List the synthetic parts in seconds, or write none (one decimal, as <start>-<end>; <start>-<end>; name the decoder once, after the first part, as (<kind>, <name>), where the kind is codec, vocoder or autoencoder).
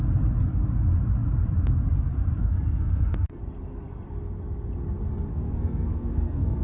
2.4-3.4 (codec, SNAC); 5.3-6.6